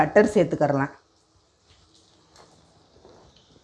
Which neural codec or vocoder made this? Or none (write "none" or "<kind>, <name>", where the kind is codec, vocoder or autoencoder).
none